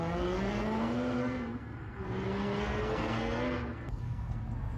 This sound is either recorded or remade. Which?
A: remade